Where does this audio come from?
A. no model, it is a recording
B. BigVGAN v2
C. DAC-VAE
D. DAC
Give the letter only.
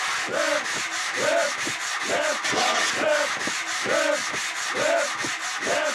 A